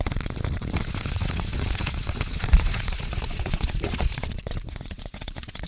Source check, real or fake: fake